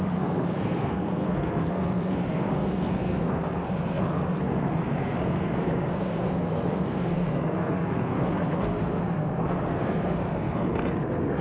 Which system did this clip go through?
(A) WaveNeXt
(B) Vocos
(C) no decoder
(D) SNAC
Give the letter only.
D